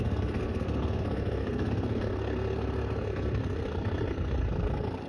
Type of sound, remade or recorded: remade